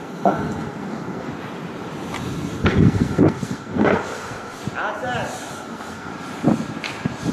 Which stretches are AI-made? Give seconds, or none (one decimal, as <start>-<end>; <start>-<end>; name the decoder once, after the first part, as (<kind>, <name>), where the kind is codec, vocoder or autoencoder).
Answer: 0.0-1.3 (codec, SNAC); 2.6-4.6; 5.5-6.1